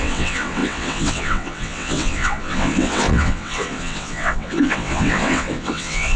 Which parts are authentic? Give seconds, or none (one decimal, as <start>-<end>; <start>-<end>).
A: none